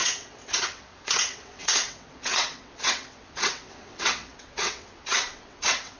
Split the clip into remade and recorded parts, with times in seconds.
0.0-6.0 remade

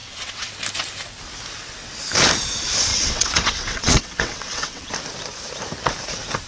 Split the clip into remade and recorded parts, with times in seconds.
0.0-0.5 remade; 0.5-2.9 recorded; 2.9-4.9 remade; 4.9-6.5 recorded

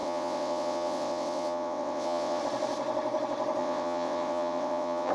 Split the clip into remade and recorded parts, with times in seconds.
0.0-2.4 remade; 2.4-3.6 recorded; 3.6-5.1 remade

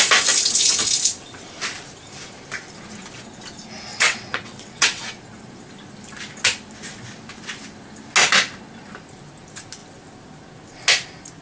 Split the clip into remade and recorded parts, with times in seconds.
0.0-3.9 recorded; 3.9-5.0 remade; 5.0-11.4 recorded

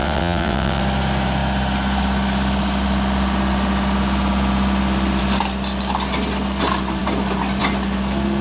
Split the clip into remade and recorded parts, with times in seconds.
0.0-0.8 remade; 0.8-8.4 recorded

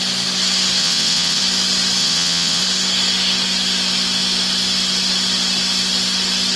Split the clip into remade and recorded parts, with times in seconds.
0.0-0.8 recorded; 0.8-1.4 remade; 1.4-2.0 recorded; 2.0-2.6 remade; 2.6-6.6 recorded

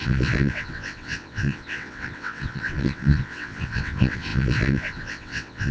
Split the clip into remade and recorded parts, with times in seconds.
0.0-5.7 remade